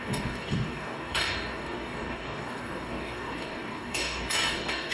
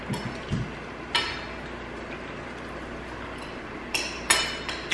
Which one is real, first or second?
second